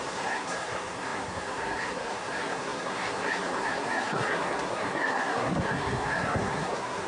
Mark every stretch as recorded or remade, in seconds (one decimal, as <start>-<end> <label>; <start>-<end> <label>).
0.0-7.1 remade